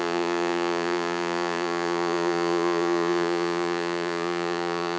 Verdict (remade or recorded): remade